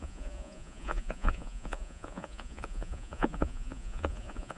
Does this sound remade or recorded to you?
remade